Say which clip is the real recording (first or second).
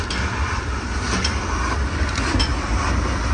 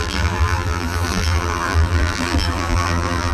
first